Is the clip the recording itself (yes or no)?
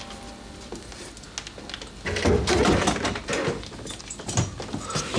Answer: yes